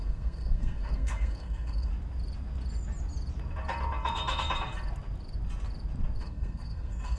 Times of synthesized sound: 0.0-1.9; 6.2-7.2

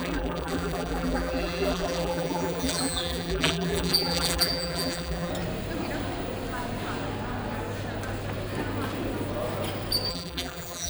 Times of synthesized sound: 0.0-5.3; 10.1-10.9

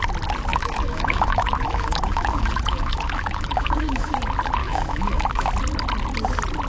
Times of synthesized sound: 0.5-4.1; 4.6-5.5